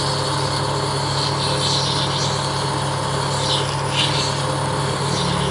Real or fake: real